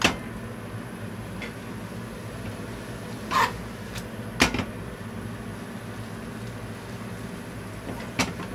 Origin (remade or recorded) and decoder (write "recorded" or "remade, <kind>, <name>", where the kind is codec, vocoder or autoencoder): recorded